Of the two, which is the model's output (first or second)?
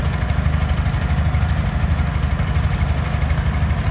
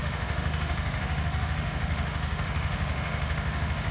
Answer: second